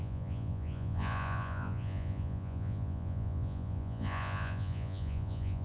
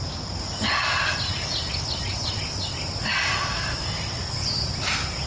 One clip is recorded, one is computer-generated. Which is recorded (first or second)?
second